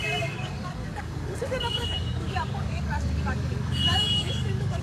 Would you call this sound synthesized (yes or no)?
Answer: yes